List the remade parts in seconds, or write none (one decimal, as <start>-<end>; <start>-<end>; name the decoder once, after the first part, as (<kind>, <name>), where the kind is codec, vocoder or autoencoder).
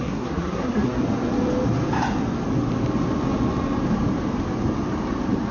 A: 0.0-1.0 (codec, SNAC)